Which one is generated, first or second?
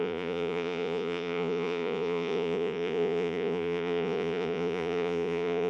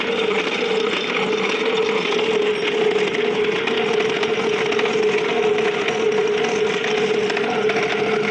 first